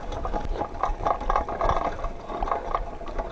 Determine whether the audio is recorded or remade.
recorded